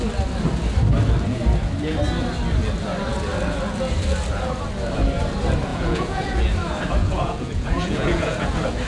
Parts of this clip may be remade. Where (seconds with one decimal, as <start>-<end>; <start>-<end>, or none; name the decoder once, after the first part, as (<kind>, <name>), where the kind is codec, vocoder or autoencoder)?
5.7-6.4 (vocoder, Vocos); 7.0-8.5